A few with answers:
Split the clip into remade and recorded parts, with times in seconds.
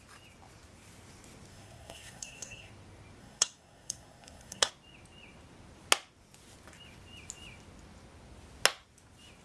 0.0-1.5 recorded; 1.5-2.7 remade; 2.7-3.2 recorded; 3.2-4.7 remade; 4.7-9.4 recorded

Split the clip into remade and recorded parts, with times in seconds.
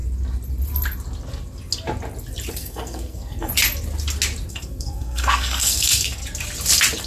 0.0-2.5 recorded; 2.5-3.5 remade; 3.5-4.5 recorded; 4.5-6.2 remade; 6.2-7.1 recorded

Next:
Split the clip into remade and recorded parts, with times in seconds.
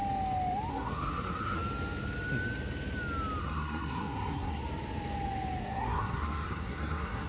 0.0-0.7 recorded; 0.7-1.6 remade; 1.6-3.4 recorded; 3.4-4.6 remade; 4.6-5.6 recorded; 5.6-7.3 remade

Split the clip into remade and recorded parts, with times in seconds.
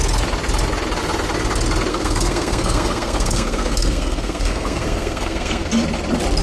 0.0-1.9 recorded; 1.9-5.7 remade; 5.7-6.4 recorded